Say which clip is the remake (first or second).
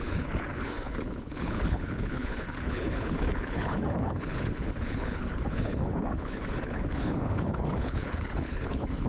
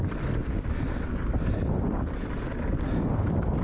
first